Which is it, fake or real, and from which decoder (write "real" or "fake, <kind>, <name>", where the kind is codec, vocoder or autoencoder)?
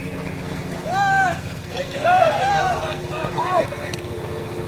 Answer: fake, codec, SNAC